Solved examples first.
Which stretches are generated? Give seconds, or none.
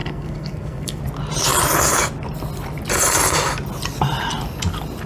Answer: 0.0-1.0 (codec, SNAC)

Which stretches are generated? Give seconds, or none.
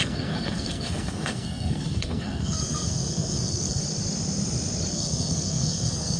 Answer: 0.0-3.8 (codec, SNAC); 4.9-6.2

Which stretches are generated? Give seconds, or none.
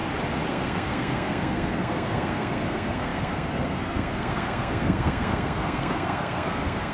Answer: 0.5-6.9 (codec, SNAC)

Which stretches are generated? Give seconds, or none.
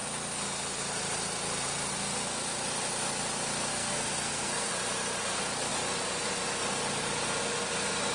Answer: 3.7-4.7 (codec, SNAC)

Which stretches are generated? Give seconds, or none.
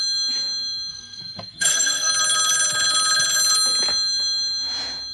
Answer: 0.9-2.1 (codec, SNAC)